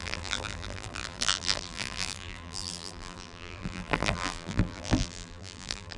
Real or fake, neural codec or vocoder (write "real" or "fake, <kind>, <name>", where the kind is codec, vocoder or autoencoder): fake, vocoder, BigVGAN v2